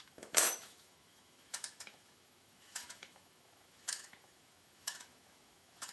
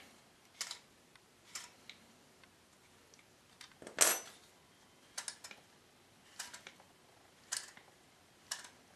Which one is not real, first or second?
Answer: first